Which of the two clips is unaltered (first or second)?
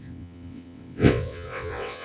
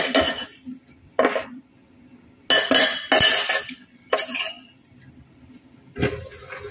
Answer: second